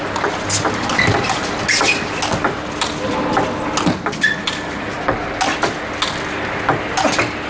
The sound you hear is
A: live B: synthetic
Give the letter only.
A